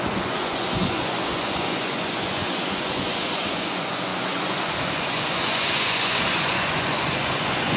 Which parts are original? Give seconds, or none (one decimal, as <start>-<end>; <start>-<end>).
none